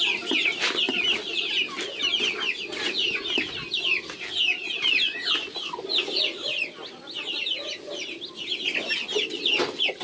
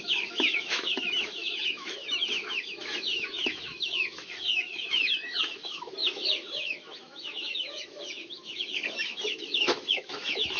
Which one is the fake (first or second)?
second